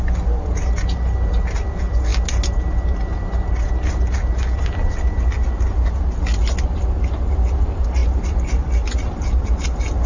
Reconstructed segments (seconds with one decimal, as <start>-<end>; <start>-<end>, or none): 8.0-9.5